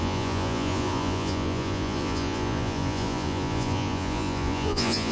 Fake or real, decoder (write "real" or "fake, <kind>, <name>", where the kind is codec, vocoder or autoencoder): fake, vocoder, Vocos